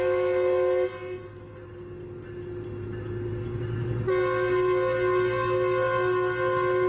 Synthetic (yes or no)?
no